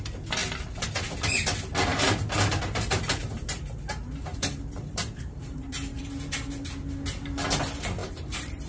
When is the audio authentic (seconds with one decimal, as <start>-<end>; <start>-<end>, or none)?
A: 0.0-2.5; 3.6-4.3; 6.0-8.0